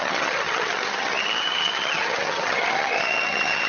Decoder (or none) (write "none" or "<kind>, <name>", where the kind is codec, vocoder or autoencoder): vocoder, HiFi-GAN